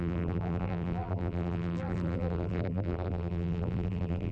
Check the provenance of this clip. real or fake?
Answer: fake